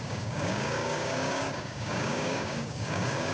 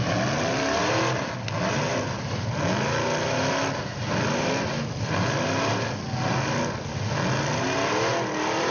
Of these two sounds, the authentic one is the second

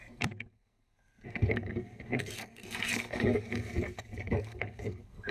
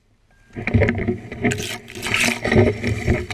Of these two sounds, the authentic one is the second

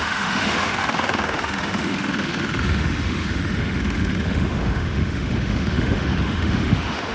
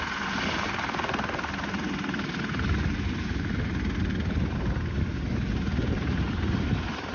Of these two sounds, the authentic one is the second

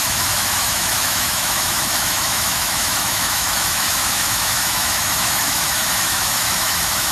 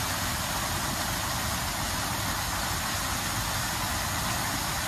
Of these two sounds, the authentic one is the second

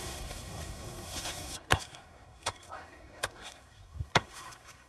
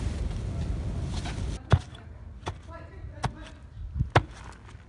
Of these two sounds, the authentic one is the second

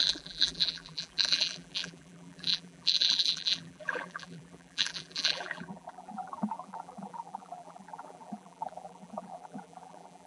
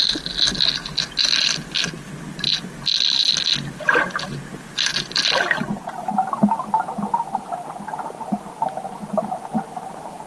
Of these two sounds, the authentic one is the second